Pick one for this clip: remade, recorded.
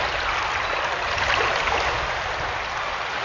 recorded